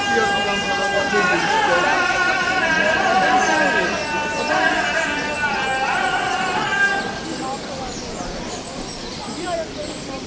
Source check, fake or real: real